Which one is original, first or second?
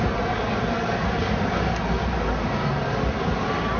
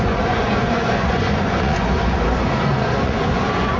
first